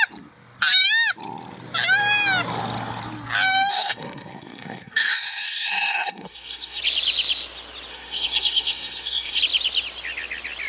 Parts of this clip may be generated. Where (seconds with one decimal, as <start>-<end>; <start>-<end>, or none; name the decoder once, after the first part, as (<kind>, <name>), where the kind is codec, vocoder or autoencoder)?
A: 3.7-6.8 (codec, SNAC); 7.9-9.4